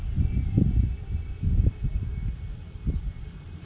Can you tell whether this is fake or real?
real